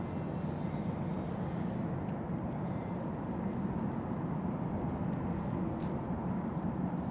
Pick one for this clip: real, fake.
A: real